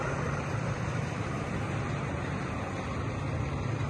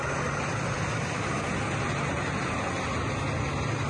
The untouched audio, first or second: second